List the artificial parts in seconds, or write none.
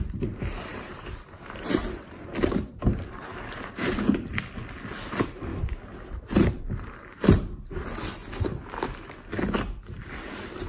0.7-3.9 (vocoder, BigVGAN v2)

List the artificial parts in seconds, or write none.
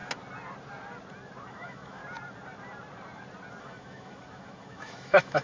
1.5-2.0 (autoencoder, DAC-VAE); 3.6-5.4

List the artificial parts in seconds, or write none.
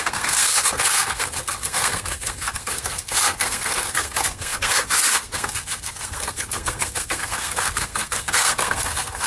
0.0-9.3 (codec, SNAC)